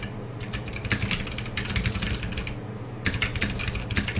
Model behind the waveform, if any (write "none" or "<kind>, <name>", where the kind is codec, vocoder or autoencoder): none